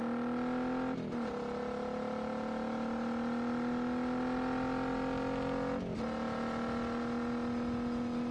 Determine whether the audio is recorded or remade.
recorded